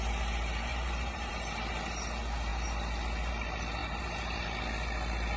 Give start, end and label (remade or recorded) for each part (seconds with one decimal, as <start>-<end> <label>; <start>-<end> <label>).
0.0-0.7 recorded; 0.7-1.3 remade; 1.3-3.8 recorded; 3.8-4.4 remade; 4.4-5.4 recorded